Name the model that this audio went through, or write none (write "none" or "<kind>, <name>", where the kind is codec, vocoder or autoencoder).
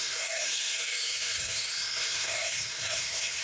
codec, SNAC